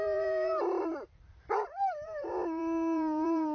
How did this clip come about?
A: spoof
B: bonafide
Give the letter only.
A